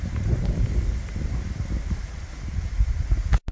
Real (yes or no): yes